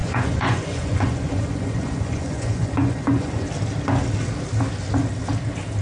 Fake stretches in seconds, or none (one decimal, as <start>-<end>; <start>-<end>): 0.0-3.5

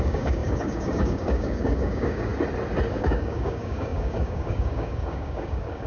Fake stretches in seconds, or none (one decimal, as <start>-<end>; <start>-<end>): 0.0-2.3; 2.9-5.9

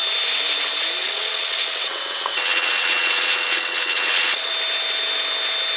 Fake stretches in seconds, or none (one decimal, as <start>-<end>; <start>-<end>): 1.0-4.5

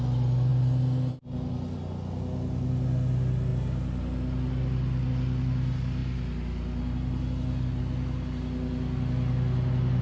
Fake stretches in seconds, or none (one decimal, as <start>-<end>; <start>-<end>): none